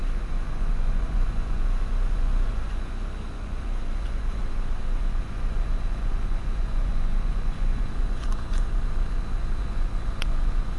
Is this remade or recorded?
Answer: remade